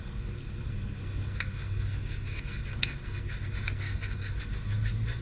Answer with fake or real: fake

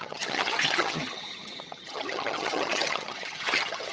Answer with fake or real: fake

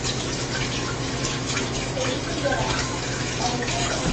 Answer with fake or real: fake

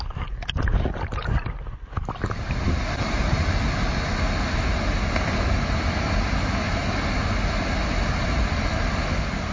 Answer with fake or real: real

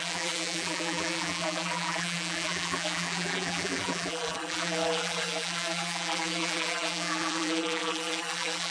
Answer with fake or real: fake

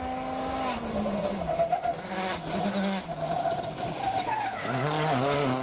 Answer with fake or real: real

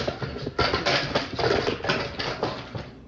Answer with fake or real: real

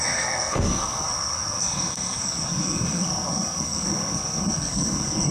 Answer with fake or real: fake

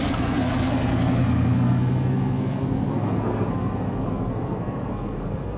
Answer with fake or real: fake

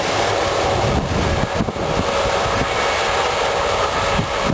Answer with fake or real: real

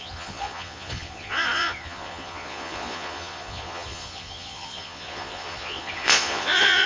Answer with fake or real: fake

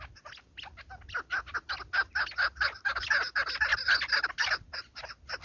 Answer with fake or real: real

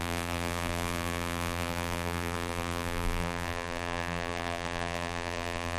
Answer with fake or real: fake